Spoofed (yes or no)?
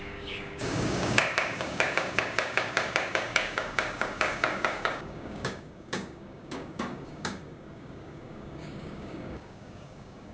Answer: yes